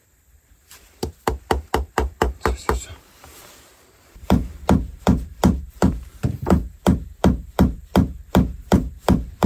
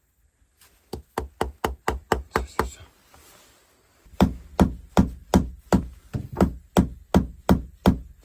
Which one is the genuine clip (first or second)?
second